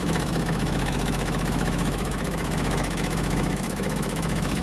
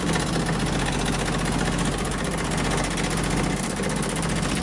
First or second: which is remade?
first